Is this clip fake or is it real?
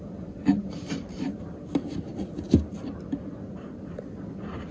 real